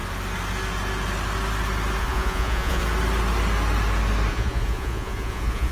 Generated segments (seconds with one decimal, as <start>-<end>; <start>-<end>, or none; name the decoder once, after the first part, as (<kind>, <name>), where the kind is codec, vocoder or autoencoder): 2.0-2.8 (vocoder, Vocos); 4.3-5.7

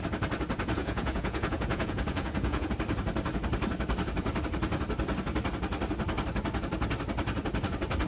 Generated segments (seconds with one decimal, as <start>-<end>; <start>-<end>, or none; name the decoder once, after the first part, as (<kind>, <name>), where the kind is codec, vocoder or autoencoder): 0.8-2.7 (vocoder, Vocos)

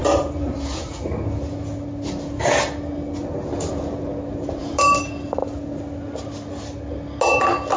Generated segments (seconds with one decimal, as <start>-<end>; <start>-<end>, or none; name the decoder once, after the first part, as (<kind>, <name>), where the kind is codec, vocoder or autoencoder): none

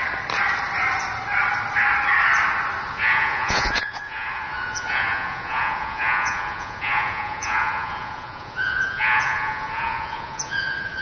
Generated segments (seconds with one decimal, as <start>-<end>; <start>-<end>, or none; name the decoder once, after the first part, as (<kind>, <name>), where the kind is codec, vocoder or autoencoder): 2.8-11.0 (vocoder, Vocos)

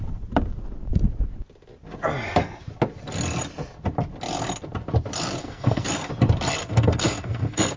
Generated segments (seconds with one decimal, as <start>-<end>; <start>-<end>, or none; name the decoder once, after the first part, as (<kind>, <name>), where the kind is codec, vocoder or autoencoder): 5.4-6.1 (codec, SNAC); 6.6-7.8

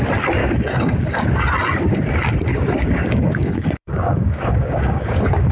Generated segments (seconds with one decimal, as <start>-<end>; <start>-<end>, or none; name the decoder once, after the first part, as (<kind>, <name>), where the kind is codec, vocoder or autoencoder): 0.4-1.3 (codec, DAC); 2.5-5.5

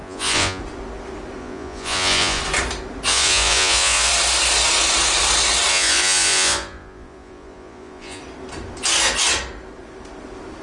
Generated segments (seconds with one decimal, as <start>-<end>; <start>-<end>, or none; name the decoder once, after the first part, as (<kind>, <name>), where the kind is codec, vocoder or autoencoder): 0.0-0.6 (vocoder, Vocos); 1.4-2.4; 3.1-4.1; 5.7-8.2